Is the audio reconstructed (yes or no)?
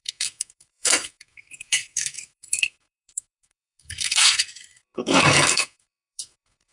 yes